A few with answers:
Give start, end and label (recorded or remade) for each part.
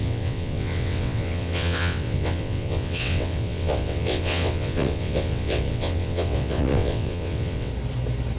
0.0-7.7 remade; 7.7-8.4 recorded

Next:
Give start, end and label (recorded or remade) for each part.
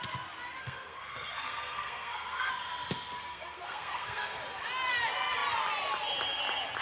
0.0-0.6 recorded; 0.6-2.5 remade; 2.5-3.3 recorded; 3.3-4.4 remade; 4.4-6.8 recorded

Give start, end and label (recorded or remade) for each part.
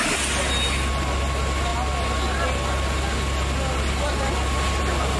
0.0-5.2 recorded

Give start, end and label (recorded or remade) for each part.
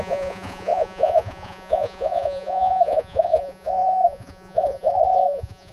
0.0-5.7 remade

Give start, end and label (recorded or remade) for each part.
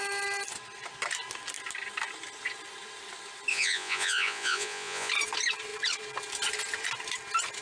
0.0-3.5 recorded; 3.5-5.1 remade; 5.1-7.6 recorded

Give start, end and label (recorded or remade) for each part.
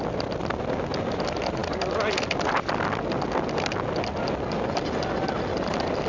0.0-6.1 recorded